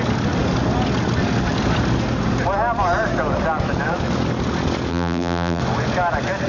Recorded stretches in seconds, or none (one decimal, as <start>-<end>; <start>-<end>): 0.0-4.9; 5.6-6.5